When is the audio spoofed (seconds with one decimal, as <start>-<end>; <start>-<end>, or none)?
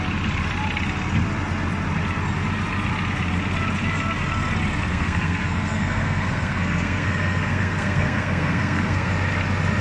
4.9-9.1